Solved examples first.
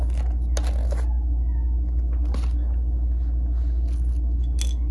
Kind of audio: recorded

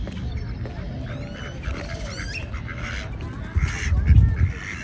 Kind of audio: recorded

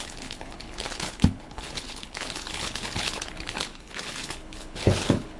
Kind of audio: remade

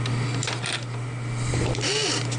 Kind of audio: recorded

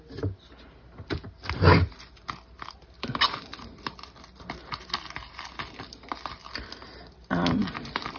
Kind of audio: recorded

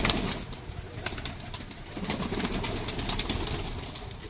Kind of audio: recorded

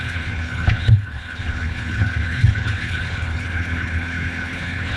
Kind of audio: remade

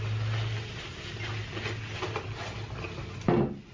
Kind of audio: recorded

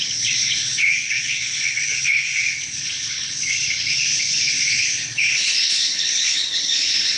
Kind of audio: remade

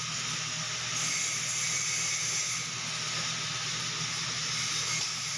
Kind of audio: recorded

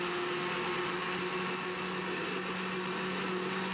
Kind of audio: recorded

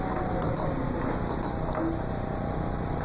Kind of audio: recorded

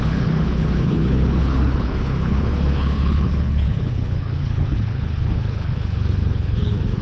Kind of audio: remade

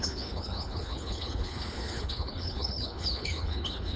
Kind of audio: remade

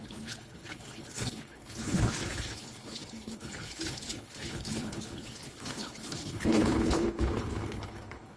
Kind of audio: remade